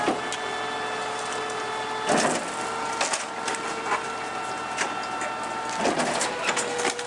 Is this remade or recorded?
recorded